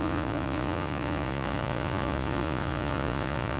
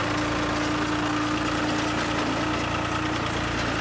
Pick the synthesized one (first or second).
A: first